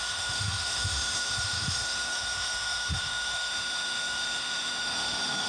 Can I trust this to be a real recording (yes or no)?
no